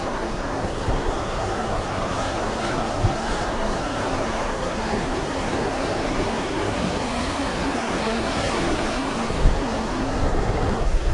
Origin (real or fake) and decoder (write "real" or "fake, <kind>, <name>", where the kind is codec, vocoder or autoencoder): fake, codec, SNAC